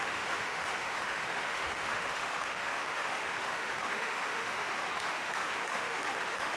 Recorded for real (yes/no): no